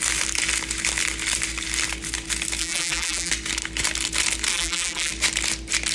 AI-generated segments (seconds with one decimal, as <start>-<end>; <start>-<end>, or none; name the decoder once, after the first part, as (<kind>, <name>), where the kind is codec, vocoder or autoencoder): 2.6-3.3 (vocoder, BigVGAN v2); 4.5-5.1